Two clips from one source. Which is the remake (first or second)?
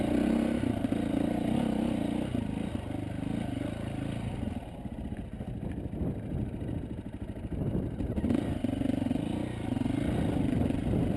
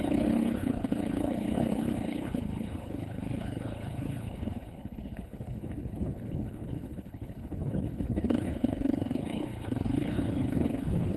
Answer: second